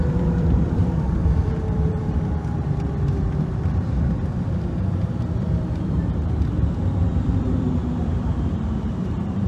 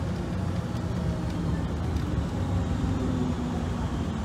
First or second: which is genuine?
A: second